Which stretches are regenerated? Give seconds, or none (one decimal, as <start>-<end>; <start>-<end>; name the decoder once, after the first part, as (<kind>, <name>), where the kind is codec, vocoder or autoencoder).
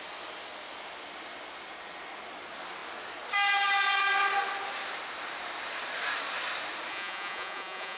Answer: 6.9-8.0 (vocoder, Vocos)